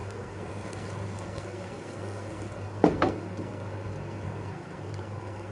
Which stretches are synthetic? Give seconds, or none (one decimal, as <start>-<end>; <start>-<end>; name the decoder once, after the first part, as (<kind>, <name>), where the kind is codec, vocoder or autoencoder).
0.0-5.5 (codec, SNAC)